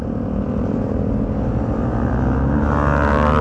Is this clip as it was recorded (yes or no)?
yes